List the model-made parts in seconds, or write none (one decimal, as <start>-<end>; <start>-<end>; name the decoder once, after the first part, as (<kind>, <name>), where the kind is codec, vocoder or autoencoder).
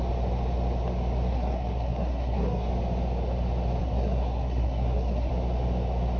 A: 1.3-2.7 (codec, SNAC); 3.8-5.3